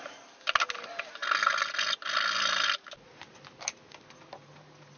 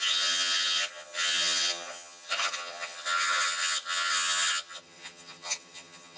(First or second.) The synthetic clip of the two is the second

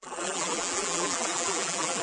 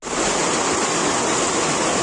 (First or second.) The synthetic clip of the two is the first